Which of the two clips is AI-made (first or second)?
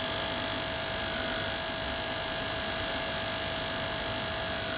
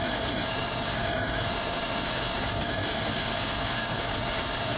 second